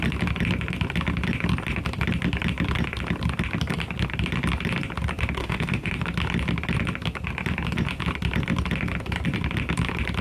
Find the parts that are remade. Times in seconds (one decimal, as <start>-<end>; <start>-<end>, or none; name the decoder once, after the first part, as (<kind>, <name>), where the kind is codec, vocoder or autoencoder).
5.4-5.9 (autoencoder, DAC-VAE)